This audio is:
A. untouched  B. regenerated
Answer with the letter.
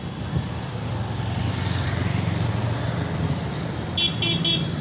A